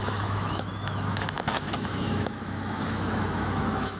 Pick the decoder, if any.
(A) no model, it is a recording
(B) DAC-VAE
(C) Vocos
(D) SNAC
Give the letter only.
B